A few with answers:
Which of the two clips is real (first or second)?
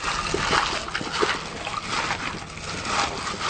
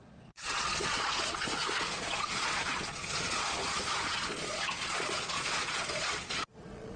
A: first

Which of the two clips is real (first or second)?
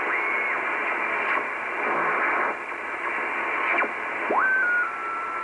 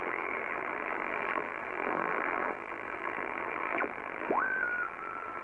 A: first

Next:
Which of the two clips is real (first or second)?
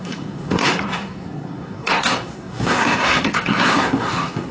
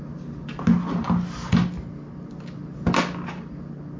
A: second